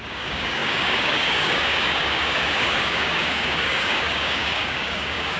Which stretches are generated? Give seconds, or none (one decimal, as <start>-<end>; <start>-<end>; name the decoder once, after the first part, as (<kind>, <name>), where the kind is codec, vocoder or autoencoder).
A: 0.0-5.4 (codec, DAC)